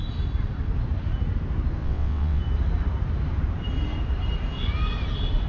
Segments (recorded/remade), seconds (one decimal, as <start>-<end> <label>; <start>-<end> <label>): 0.0-1.8 recorded; 1.8-2.4 remade; 2.4-5.5 recorded